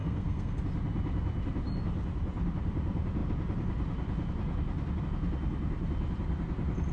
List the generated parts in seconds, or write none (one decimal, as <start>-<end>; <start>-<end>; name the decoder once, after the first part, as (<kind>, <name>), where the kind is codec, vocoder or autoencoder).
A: 0.0-0.6 (codec, SNAC)